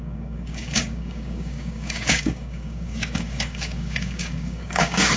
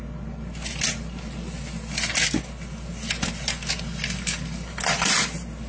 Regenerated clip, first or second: first